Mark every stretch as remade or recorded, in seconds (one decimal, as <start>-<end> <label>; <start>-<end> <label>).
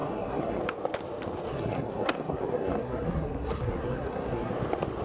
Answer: 0.0-0.6 remade; 0.6-1.5 recorded; 1.5-4.5 remade; 4.5-5.0 recorded